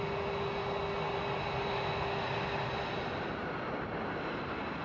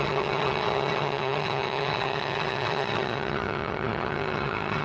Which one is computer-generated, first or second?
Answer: second